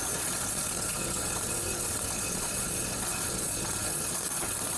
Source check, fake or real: fake